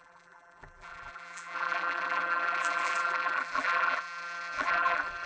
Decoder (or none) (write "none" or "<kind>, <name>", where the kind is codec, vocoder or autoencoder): vocoder, BigVGAN v2